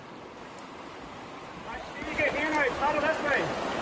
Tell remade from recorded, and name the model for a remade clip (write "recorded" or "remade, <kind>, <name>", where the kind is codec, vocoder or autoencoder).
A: recorded